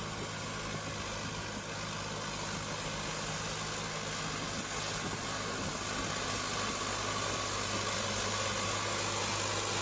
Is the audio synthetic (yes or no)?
no